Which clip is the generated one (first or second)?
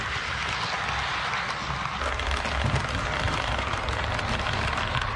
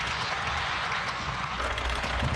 second